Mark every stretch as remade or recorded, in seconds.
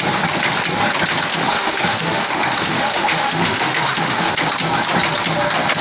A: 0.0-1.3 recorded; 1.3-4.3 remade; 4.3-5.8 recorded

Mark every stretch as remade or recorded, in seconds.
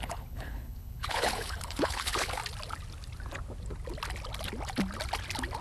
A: 0.0-2.4 remade; 2.4-5.6 recorded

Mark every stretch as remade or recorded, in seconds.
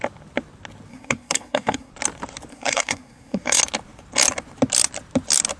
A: 0.0-0.9 recorded; 0.9-1.9 remade; 1.9-2.5 recorded; 2.5-3.6 remade; 3.6-5.6 recorded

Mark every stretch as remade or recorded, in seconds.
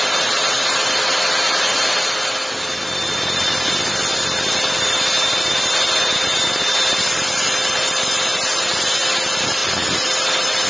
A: 0.0-10.7 recorded